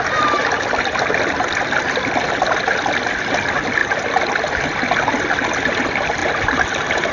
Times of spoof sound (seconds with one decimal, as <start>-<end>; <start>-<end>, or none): 0.4-1.6; 6.2-7.1